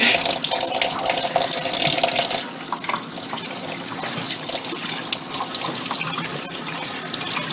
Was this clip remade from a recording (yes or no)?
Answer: no